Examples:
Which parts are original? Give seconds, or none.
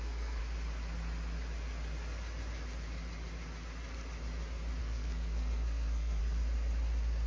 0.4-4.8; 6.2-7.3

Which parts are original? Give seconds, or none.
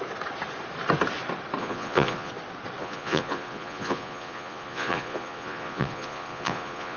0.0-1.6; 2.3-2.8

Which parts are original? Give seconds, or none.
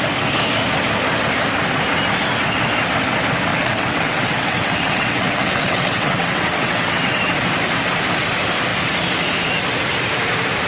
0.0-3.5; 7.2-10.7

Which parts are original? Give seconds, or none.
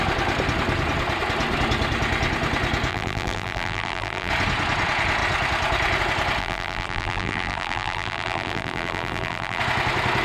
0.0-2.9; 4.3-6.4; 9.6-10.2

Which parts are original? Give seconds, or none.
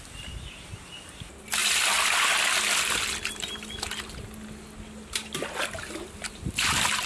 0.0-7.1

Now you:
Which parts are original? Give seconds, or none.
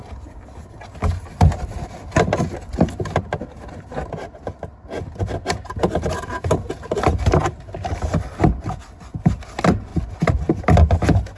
0.0-11.4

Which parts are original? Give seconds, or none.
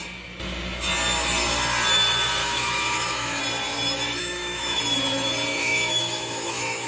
0.0-2.4; 3.4-4.2; 4.8-5.5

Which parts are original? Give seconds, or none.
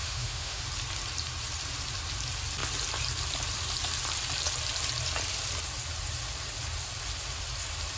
0.6-8.0